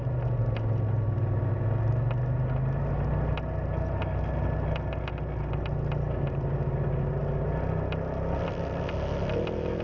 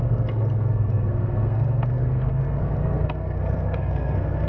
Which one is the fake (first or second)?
second